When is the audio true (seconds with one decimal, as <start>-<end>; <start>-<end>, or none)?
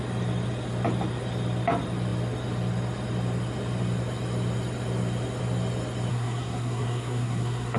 0.0-6.1